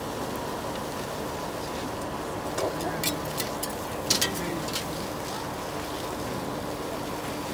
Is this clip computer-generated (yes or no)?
no